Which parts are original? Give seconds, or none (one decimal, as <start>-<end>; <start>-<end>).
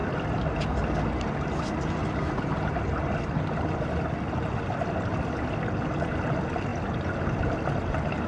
0.0-8.3